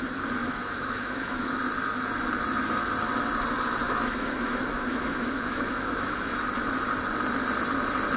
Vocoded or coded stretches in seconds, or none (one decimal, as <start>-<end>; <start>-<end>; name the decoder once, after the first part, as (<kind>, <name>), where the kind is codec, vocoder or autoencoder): 0.4-1.6 (autoencoder, DAC-VAE); 3.8-6.4